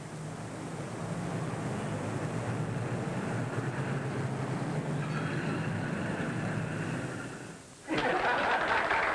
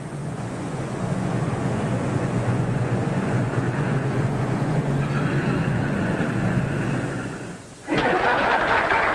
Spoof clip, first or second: second